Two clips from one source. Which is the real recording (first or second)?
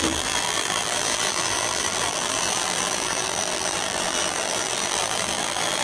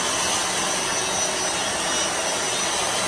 second